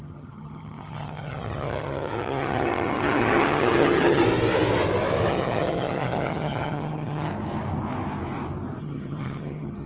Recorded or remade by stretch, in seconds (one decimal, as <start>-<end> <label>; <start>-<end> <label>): 0.0-4.2 remade; 4.2-5.3 recorded; 5.3-7.3 remade; 7.3-8.8 recorded; 8.8-9.9 remade

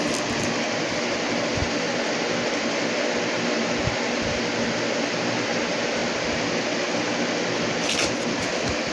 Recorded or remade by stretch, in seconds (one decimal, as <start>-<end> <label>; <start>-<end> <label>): 0.0-8.9 recorded

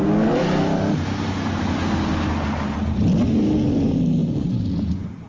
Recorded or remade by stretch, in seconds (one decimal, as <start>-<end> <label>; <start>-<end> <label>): 0.0-4.2 recorded; 4.2-5.3 remade

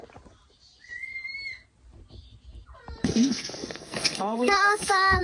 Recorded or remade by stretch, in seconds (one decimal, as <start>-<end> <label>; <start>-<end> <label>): 0.0-3.0 recorded; 3.0-5.2 remade

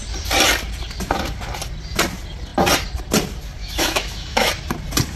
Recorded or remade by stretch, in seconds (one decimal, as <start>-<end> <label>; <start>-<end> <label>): 0.0-3.6 recorded; 3.6-4.5 remade; 4.5-5.2 recorded

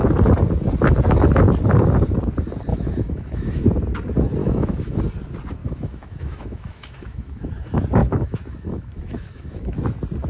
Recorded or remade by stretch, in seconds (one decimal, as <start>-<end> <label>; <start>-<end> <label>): 0.0-2.7 recorded; 2.7-3.6 remade; 3.6-4.4 recorded; 4.4-5.0 remade; 5.0-5.6 recorded; 5.6-7.5 remade; 7.5-8.0 recorded; 8.0-9.8 remade; 9.8-10.3 recorded

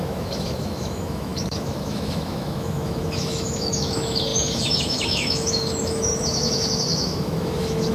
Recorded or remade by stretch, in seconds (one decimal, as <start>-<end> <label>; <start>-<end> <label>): 0.0-7.9 remade